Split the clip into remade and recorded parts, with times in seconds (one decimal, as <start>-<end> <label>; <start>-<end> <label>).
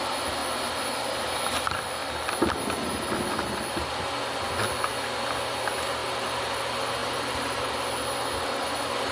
0.0-6.0 recorded; 6.0-6.6 remade; 6.6-7.0 recorded; 7.0-7.7 remade; 7.7-9.1 recorded